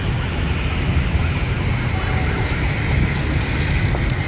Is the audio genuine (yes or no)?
yes